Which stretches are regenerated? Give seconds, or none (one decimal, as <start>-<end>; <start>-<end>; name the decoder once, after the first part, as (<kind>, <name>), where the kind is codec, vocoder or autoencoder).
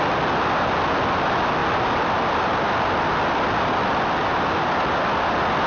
none